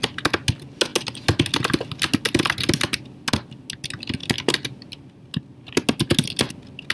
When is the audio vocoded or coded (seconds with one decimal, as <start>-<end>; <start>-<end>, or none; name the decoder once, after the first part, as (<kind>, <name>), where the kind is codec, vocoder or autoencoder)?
none